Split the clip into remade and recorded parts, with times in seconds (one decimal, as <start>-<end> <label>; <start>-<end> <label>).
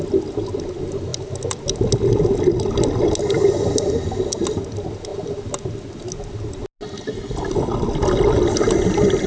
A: 0.0-9.3 recorded